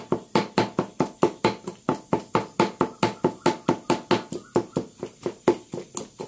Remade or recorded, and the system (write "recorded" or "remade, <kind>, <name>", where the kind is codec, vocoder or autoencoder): recorded